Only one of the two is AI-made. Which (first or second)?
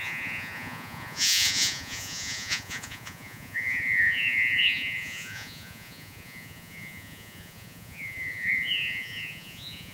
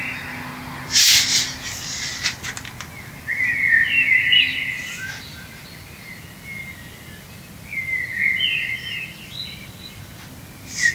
first